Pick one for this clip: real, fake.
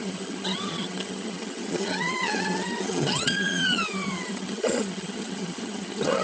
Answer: fake